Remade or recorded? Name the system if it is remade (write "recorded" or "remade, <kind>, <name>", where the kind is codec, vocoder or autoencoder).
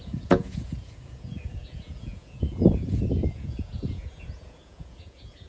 remade, vocoder, Vocos